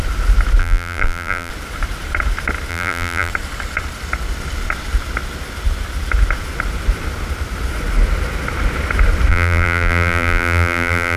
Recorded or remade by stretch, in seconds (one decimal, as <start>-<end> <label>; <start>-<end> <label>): 0.0-0.6 recorded; 0.6-1.5 remade; 1.5-2.7 recorded; 2.7-3.3 remade; 3.3-9.3 recorded; 9.3-11.2 remade